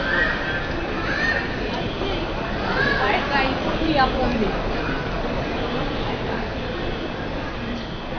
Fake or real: real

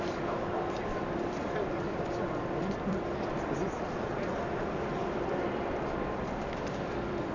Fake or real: fake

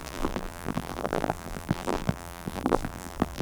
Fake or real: fake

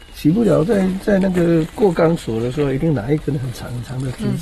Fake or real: real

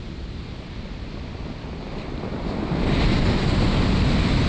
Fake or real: real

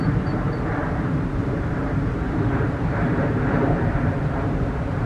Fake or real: fake